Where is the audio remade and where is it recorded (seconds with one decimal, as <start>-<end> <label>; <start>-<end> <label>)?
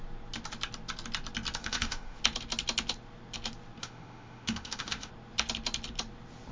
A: 0.0-1.6 recorded; 1.6-2.2 remade; 2.2-3.8 recorded; 3.8-5.1 remade; 5.1-6.5 recorded